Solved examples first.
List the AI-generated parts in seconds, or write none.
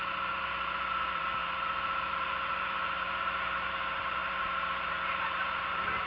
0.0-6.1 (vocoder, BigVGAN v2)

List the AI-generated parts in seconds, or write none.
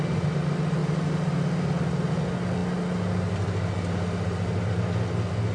none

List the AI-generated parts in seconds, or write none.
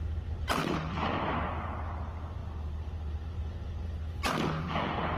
0.6-1.2 (vocoder, BigVGAN v2)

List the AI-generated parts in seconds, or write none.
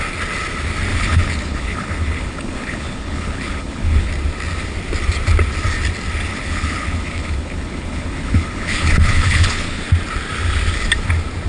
0.9-4.1 (codec, HILCodec); 6.3-9.8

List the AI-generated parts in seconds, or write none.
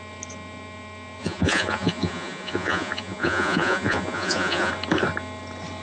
1.2-4.7 (vocoder, Vocos)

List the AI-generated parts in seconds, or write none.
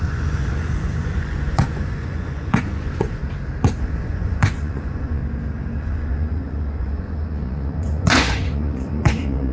0.0-3.2 (vocoder, Vocos); 3.8-5.2; 5.8-9.5